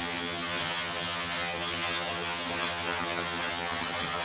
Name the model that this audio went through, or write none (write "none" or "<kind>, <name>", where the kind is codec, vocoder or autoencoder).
vocoder, HiFi-GAN